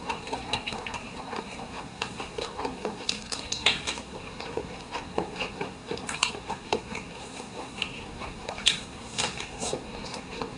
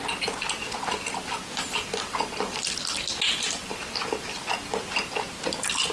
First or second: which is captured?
second